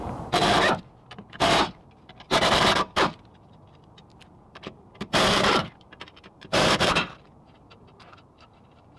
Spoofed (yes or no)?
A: yes